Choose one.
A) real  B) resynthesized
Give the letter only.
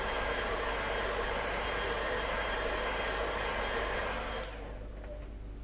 A